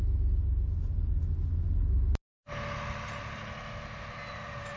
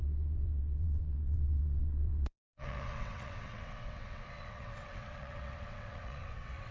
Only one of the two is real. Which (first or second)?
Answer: first